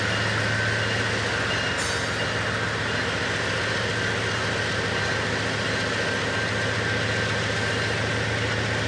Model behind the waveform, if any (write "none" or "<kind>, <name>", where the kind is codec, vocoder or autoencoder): none